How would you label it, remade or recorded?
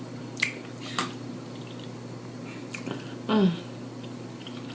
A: recorded